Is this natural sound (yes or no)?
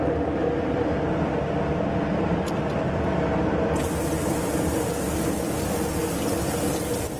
yes